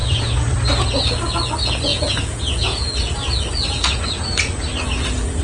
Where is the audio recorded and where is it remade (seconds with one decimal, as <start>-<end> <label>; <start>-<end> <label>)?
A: 0.0-0.5 remade; 0.5-1.9 recorded; 1.9-4.6 remade; 4.6-5.4 recorded